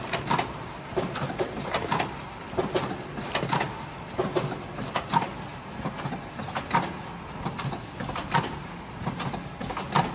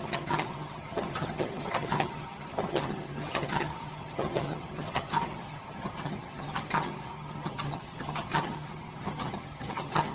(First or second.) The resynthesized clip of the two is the second